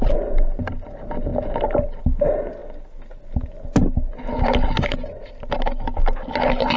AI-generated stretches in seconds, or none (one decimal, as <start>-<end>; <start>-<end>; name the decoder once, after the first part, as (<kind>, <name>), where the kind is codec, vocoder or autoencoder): none